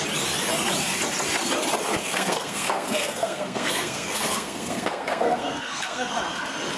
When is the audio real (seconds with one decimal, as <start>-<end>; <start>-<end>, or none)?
0.0-2.0; 6.1-6.8